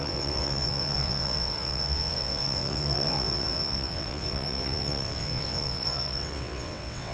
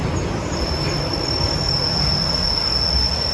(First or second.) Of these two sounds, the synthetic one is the first